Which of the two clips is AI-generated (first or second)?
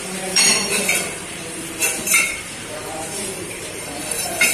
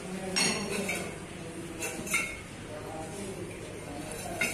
first